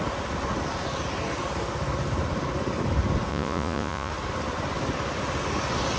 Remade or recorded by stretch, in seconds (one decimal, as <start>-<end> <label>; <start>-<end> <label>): 0.0-3.3 recorded; 3.3-4.1 remade; 4.1-6.0 recorded